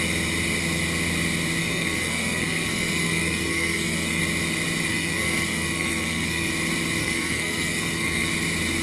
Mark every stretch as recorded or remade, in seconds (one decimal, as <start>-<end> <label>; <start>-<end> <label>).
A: 0.0-1.6 recorded; 1.6-4.2 remade; 4.2-4.9 recorded; 4.9-6.5 remade; 6.5-7.0 recorded; 7.0-8.3 remade; 8.3-8.8 recorded